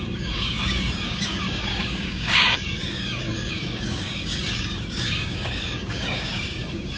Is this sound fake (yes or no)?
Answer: yes